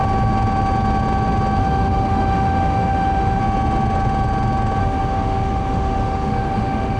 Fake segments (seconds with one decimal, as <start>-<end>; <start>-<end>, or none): 1.6-3.4; 4.8-7.0